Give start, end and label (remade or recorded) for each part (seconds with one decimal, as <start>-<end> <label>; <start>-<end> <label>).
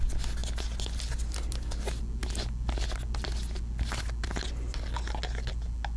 0.0-6.0 recorded